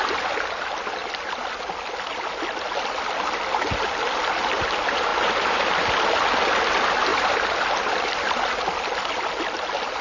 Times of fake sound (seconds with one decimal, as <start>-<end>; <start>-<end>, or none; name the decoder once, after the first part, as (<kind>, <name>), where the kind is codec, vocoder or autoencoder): none